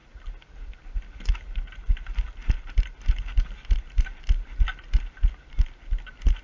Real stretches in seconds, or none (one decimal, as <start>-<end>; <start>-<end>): 0.0-6.4